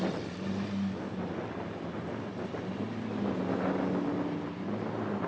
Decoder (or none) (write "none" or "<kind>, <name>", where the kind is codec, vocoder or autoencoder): none